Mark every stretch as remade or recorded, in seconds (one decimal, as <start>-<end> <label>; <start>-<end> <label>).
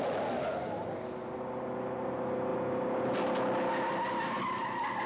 0.0-5.1 recorded